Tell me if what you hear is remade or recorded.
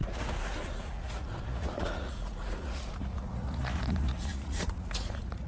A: remade